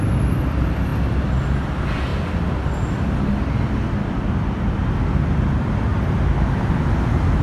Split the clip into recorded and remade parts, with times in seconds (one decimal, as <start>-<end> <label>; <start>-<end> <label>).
0.0-7.4 recorded